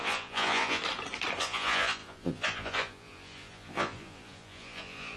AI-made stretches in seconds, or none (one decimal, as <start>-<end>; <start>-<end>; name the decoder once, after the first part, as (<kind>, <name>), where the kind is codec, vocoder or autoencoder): 0.0-0.8 (vocoder, Vocos); 1.4-5.2